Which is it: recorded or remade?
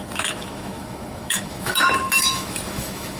remade